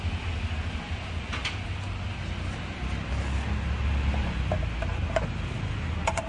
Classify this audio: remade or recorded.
recorded